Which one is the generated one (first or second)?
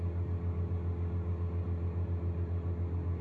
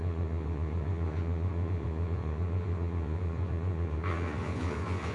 second